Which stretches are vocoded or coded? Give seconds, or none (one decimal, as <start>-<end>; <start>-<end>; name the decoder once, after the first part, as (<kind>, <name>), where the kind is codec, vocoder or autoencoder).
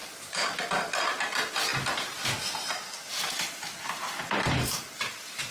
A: 0.0-0.7 (vocoder, BigVGAN v2)